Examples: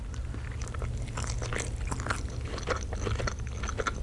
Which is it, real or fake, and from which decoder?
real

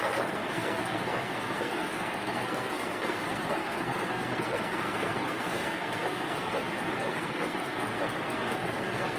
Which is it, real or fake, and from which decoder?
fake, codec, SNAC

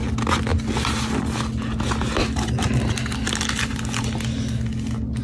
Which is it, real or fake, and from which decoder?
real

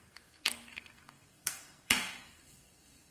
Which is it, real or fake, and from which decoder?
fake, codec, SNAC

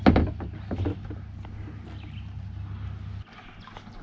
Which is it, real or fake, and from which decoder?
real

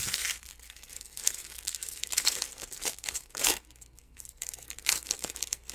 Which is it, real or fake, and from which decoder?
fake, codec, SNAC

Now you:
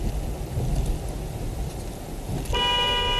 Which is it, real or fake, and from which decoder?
real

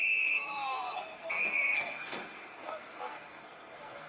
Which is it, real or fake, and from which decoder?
fake, codec, SNAC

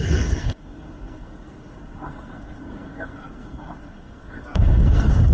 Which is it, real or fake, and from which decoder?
fake, codec, SNAC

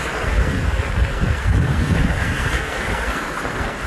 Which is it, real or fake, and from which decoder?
fake, codec, SNAC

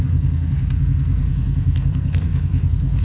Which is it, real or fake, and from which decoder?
fake, codec, SNAC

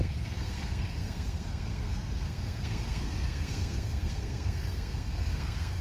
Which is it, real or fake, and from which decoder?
fake, codec, SNAC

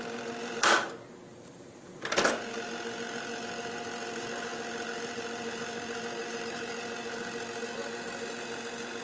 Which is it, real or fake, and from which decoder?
real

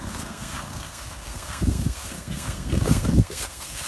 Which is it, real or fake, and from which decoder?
fake, codec, SNAC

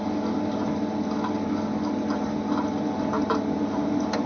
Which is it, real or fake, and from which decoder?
real